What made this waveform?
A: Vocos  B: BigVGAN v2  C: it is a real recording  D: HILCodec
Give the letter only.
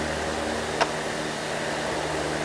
C